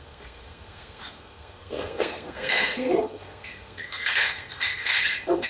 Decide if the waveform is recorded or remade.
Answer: remade